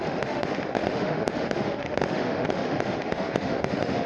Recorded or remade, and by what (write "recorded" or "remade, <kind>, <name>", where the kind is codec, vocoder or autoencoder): remade, autoencoder, DAC-VAE